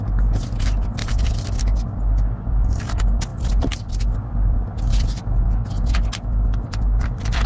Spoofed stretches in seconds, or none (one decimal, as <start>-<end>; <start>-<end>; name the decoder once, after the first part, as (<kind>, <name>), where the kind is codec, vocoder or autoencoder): none